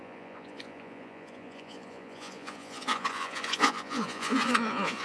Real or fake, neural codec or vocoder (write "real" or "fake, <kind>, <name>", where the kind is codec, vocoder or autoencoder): fake, vocoder, Vocos